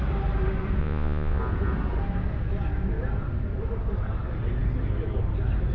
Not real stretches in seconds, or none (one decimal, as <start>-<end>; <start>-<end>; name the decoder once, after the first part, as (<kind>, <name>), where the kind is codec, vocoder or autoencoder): 0.8-1.4 (vocoder, Vocos)